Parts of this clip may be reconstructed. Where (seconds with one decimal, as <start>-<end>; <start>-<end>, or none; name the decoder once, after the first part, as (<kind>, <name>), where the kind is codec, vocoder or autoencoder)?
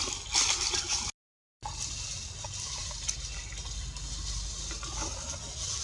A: none